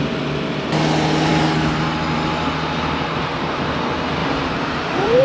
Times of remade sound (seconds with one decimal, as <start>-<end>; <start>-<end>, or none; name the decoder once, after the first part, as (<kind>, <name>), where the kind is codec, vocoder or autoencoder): 4.2-5.2 (vocoder, BigVGAN v2)